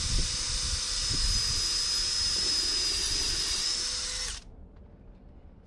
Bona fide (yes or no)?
yes